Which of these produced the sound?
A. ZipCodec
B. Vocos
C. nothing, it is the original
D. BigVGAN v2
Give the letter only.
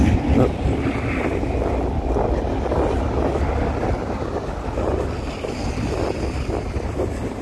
C